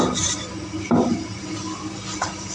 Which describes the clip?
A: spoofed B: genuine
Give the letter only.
B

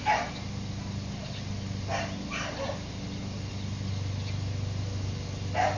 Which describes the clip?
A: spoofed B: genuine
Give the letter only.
B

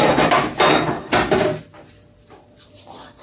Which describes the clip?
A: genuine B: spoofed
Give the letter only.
A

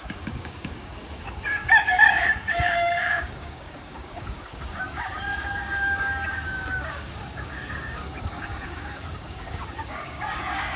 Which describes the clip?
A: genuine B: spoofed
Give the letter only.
B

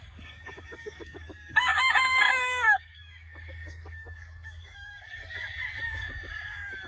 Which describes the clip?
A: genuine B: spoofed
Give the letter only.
B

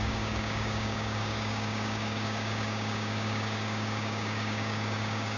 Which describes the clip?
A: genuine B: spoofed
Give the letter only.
B